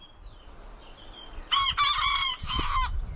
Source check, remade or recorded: recorded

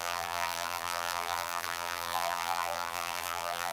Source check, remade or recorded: remade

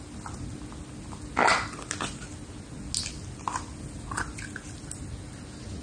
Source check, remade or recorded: recorded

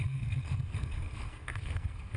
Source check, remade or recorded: remade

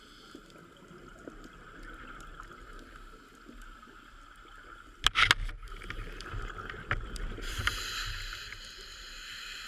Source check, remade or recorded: recorded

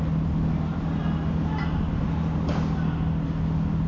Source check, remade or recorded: recorded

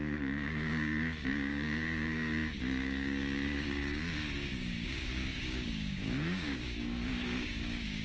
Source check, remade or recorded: remade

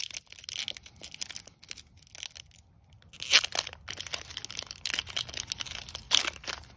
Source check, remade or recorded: recorded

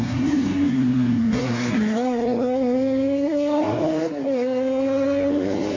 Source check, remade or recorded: remade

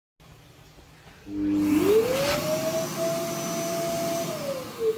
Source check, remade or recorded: recorded